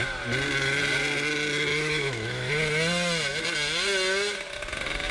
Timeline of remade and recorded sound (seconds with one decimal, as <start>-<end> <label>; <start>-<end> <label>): 0.0-1.7 recorded; 1.7-2.5 remade; 2.5-5.1 recorded